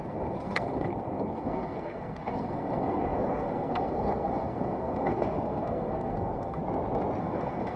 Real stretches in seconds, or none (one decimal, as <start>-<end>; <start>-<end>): 6.6-7.2